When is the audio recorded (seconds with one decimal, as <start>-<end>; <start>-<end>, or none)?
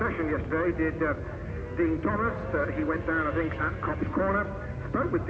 0.0-5.3